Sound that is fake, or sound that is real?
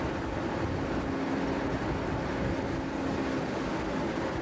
real